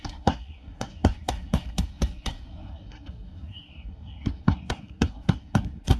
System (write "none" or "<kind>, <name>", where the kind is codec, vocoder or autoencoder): codec, SNAC